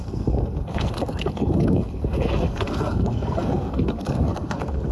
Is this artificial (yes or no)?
yes